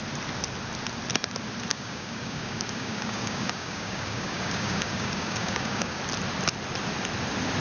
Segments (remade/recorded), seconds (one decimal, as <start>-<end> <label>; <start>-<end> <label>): 0.0-1.7 recorded; 1.7-6.0 remade; 6.0-7.6 recorded